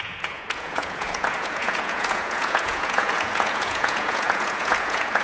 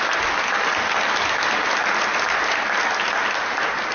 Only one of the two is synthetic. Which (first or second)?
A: first